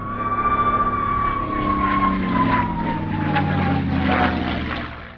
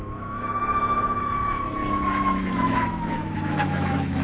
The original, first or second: first